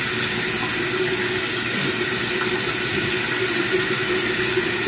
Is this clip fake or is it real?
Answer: real